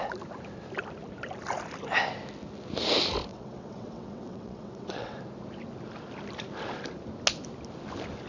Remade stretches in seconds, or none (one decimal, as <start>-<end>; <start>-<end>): 3.3-5.2